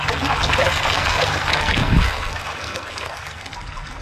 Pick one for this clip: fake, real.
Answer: fake